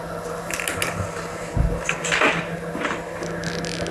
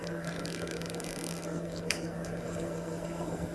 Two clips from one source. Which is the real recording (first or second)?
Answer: first